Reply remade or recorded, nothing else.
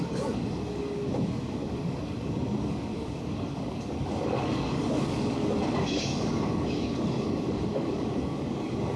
remade